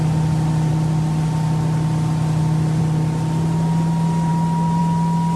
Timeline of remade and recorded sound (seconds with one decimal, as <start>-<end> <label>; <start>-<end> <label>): 0.0-5.4 recorded